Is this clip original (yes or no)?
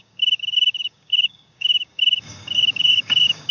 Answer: no